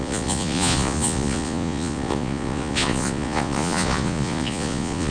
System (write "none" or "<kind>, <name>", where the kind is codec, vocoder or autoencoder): vocoder, Vocos